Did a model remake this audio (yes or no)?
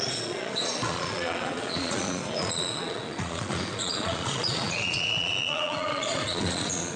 yes